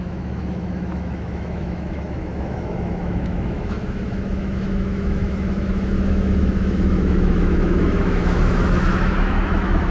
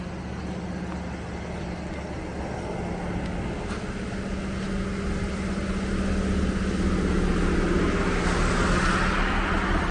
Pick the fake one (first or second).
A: first